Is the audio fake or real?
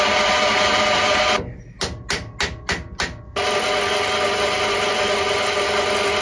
real